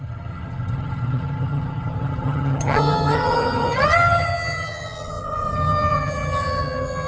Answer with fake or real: fake